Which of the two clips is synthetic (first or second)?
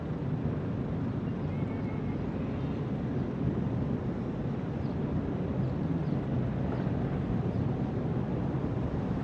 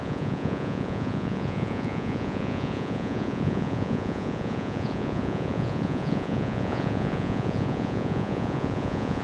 second